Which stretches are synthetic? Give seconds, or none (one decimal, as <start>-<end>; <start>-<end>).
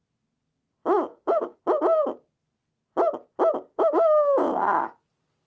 1.1-1.6; 3.7-4.4